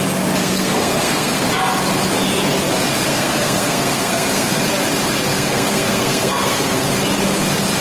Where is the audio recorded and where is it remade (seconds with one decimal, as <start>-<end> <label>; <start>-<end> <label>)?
0.0-0.4 recorded; 0.4-1.5 remade; 1.5-3.1 recorded; 3.1-4.6 remade; 4.6-5.3 recorded; 5.3-6.9 remade; 6.9-7.8 recorded